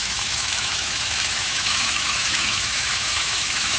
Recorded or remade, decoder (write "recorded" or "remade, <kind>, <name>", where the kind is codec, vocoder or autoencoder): remade, autoencoder, DAC-VAE